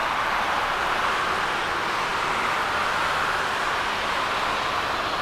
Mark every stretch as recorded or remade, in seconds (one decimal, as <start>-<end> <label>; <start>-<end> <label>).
0.0-2.1 recorded; 2.1-4.4 remade; 4.4-5.2 recorded